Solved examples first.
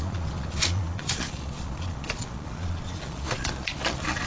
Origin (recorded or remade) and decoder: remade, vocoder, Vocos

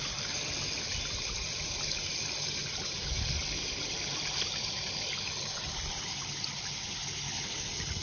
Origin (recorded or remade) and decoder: recorded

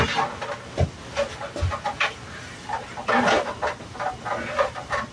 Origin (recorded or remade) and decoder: recorded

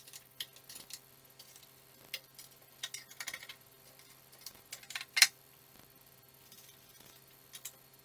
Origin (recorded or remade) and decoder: recorded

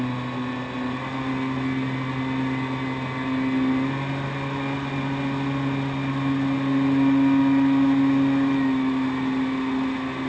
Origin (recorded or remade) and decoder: recorded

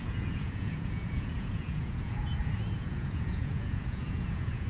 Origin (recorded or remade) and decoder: remade, vocoder, Vocos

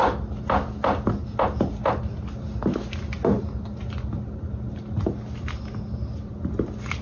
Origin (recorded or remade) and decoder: recorded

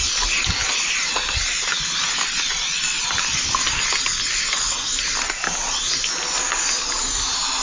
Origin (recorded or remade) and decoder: recorded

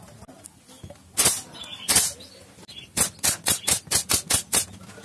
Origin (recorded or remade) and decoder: recorded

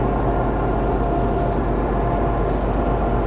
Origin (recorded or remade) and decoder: recorded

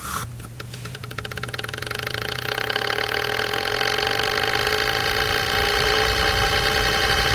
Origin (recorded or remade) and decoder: remade, vocoder, Vocos